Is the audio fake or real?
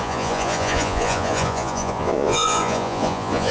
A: fake